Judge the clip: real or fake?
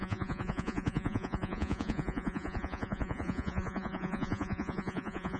fake